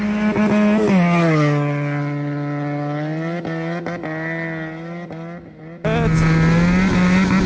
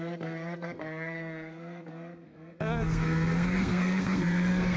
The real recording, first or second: first